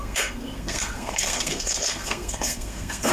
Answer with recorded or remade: remade